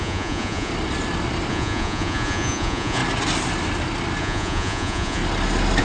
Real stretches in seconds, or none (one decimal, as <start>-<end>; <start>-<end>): 0.7-1.5; 3.0-4.2; 5.2-5.8